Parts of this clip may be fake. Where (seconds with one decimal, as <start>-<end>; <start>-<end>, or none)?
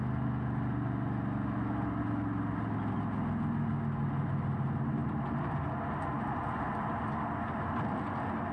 none